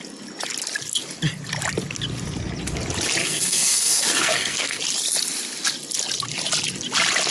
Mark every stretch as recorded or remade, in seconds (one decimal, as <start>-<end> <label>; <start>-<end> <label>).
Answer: 0.0-3.2 recorded; 3.2-4.8 remade; 4.8-7.3 recorded